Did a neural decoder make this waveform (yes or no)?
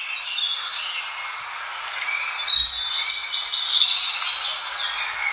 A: no